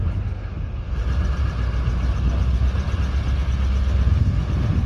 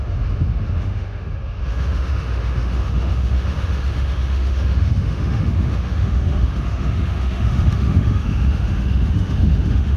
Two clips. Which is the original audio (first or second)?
first